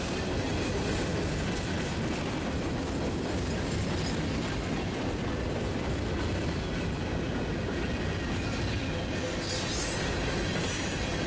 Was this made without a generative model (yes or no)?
yes